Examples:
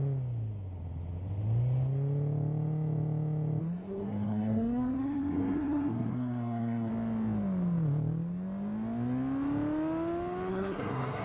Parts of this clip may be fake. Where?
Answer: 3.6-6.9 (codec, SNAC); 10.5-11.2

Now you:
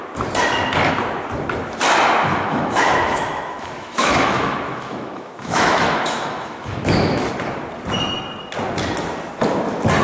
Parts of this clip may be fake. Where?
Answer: 2.3-7.3 (autoencoder, DAC-VAE)

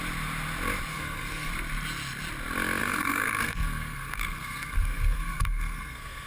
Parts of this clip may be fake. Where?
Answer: 0.9-1.5 (codec, SNAC); 2.8-6.3

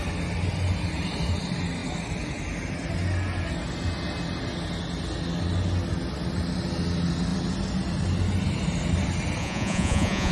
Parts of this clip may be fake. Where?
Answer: 9.4-10.3 (vocoder, Vocos)

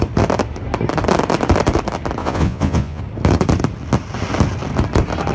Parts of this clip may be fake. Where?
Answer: 2.2-3.0 (vocoder, Vocos)

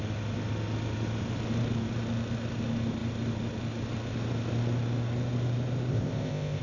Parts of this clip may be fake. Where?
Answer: 5.9-6.6 (codec, ZipCodec)

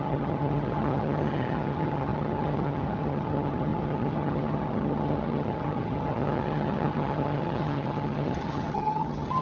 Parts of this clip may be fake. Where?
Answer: 0.0-9.4 (vocoder, HiFi-GAN)

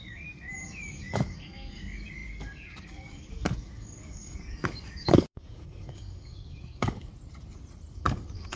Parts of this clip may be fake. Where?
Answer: 0.0-7.1 (codec, DAC); 7.9-8.6